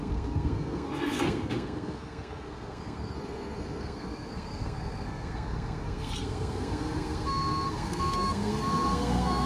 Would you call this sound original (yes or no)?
no